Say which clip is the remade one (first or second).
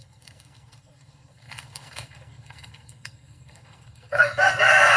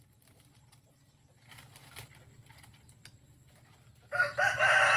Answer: first